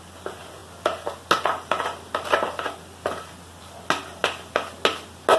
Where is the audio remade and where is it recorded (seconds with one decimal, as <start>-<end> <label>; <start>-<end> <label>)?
0.0-5.4 recorded